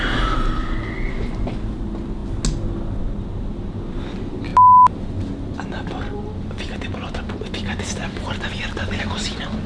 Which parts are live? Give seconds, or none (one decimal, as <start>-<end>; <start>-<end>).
0.0-9.7